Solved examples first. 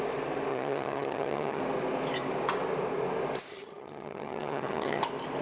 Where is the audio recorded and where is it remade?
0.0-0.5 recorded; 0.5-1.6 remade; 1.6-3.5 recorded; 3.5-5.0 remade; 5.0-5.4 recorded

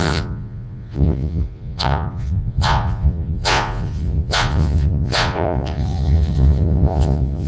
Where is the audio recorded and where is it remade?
0.0-7.5 remade

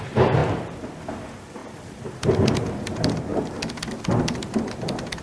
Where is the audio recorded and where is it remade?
0.0-0.4 recorded; 0.4-1.1 remade; 1.1-5.2 recorded

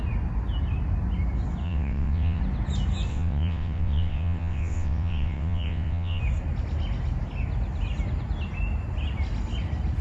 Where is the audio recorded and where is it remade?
0.0-1.6 recorded; 1.6-2.4 remade; 2.4-3.1 recorded; 3.1-6.2 remade; 6.2-10.0 recorded

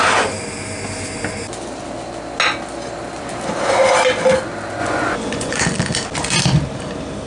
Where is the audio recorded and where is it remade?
0.0-4.8 recorded; 4.8-5.6 remade; 5.6-7.3 recorded